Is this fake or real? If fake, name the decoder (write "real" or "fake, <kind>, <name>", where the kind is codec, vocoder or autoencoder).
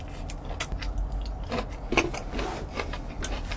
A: real